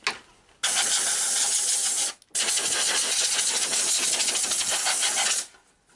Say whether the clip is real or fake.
real